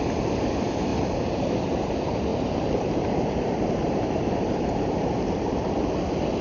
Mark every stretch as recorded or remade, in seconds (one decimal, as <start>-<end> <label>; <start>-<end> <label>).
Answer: 0.0-0.9 recorded; 0.9-1.9 remade; 1.9-2.3 recorded; 2.3-5.7 remade; 5.7-6.4 recorded